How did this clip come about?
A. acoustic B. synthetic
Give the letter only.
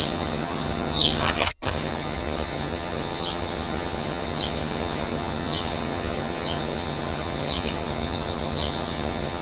B